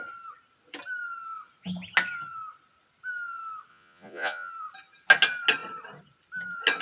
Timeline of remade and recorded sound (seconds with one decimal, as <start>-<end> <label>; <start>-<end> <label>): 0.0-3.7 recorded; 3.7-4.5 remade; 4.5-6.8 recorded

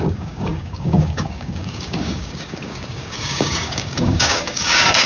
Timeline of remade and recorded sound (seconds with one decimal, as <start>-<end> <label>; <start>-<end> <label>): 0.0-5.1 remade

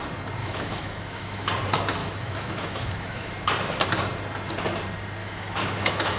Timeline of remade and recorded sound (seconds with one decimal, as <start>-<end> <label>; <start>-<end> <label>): 0.0-0.4 recorded; 0.4-1.5 remade; 1.5-2.0 recorded; 2.0-3.3 remade; 3.3-5.2 recorded; 5.2-6.2 remade

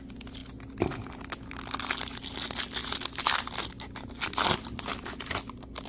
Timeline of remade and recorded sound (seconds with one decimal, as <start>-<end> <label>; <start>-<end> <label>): 0.0-5.9 recorded

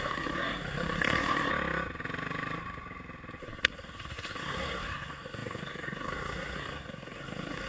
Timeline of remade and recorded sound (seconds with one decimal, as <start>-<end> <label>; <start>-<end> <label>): 0.0-1.5 remade; 1.5-3.4 recorded; 3.4-7.7 remade

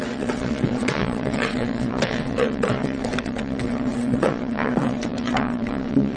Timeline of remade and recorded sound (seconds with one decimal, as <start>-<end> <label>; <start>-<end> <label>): 0.0-6.2 remade